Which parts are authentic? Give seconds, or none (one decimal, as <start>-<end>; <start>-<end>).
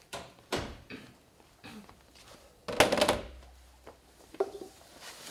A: 2.6-3.3